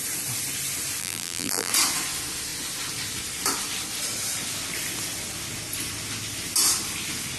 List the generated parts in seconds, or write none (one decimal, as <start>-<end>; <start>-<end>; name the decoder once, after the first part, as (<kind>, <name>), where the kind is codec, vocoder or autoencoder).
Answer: 1.0-1.7 (vocoder, BigVGAN v2)